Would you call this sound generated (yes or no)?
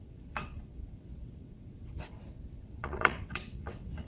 yes